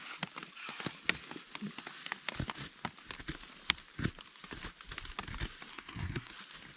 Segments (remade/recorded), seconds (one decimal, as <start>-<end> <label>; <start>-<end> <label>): 0.0-5.7 recorded; 5.7-6.3 remade; 6.3-6.8 recorded